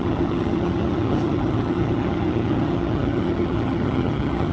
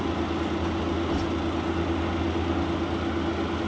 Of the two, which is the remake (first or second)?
first